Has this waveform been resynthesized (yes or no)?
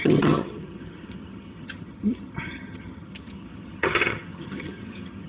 yes